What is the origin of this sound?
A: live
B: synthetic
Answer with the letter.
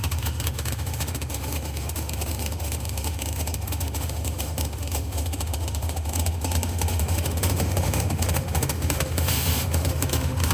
B